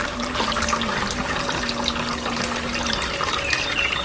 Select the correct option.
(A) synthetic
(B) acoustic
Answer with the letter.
B